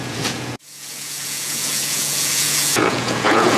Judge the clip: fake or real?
fake